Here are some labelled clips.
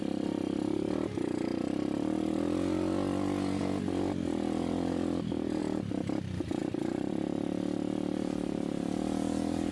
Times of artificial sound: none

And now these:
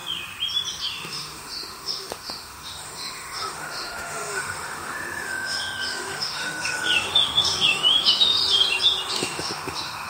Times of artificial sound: 0.8-8.4; 9.1-10.1